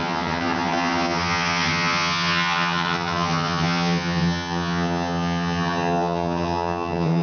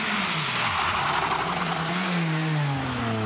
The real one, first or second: second